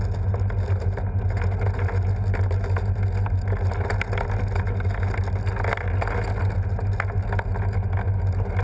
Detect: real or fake real